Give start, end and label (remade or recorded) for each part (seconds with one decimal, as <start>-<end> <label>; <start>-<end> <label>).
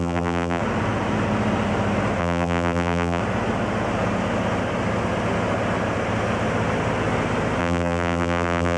0.0-0.6 remade; 0.6-2.2 recorded; 2.2-3.2 remade; 3.2-7.6 recorded; 7.6-8.8 remade